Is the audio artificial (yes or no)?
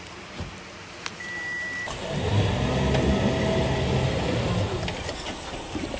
no